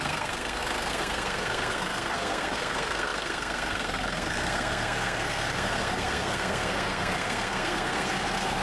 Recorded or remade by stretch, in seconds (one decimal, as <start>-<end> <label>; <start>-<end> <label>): 0.0-8.6 remade